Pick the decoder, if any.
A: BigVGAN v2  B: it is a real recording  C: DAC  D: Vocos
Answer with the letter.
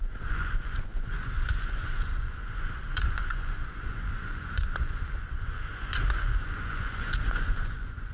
D